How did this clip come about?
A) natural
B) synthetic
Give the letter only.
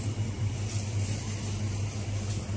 B